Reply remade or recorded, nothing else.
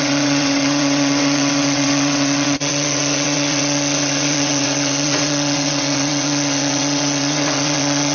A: remade